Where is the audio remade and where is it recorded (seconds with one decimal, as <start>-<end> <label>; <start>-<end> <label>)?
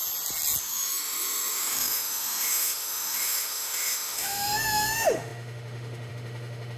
0.0-0.6 recorded; 0.6-6.8 remade